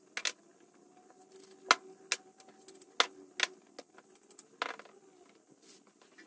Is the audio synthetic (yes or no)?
no